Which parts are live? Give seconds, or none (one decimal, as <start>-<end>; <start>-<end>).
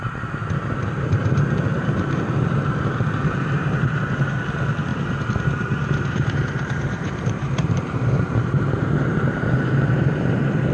0.0-1.7; 2.2-3.2; 4.4-4.9; 9.4-10.7